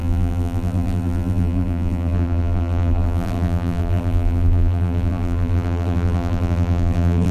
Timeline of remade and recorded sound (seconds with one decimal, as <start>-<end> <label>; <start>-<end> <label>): 0.0-7.3 remade